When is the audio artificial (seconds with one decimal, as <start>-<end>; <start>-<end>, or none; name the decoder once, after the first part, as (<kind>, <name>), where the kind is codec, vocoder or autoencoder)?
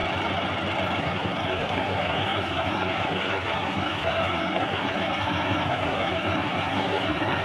1.0-7.4 (codec, SNAC)